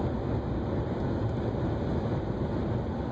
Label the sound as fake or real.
real